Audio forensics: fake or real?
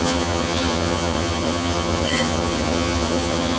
fake